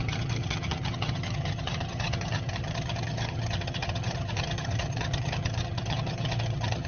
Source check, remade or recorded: remade